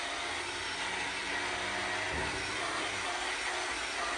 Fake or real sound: real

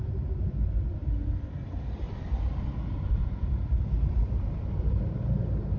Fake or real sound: real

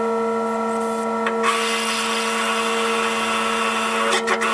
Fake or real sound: real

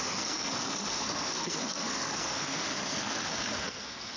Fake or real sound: fake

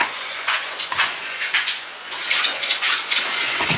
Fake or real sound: fake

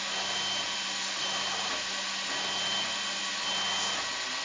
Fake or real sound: real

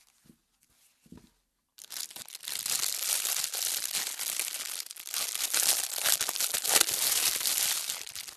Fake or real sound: real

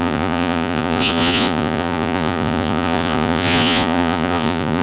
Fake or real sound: fake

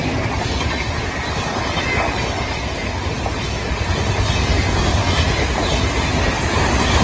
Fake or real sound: real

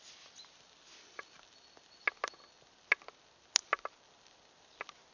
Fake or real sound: real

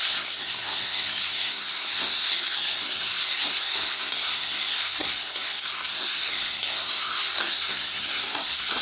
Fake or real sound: fake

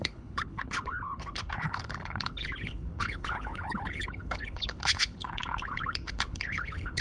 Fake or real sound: fake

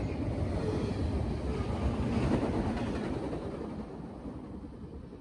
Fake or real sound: real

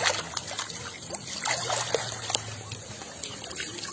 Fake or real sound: real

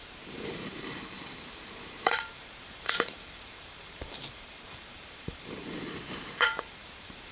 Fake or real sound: fake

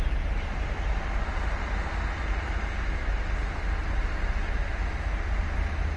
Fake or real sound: real